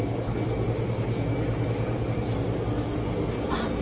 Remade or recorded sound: recorded